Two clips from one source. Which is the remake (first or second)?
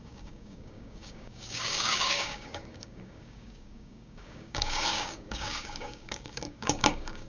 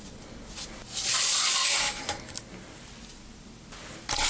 first